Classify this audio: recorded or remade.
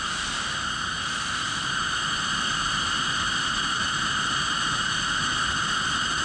recorded